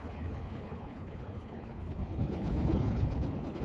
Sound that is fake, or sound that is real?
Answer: fake